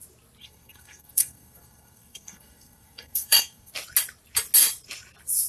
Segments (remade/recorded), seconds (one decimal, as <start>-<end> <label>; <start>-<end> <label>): 0.0-0.4 recorded; 0.4-3.7 remade; 3.7-5.5 recorded